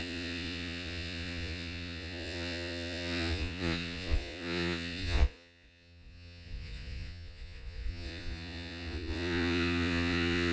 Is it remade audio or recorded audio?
remade